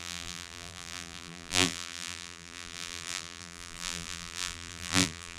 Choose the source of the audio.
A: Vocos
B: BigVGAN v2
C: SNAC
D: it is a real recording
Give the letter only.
B